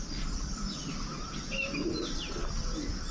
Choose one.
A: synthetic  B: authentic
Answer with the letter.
B